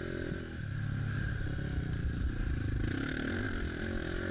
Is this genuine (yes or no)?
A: yes